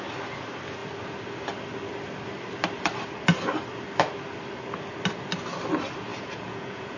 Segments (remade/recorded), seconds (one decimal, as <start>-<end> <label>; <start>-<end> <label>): 0.0-6.1 recorded; 6.1-7.0 remade